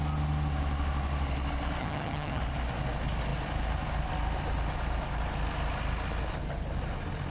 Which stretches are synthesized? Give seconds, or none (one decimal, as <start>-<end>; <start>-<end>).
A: 1.8-2.4